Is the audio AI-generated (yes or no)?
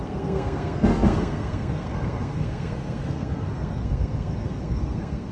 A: yes